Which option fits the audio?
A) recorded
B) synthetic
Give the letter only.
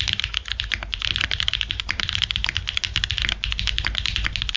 A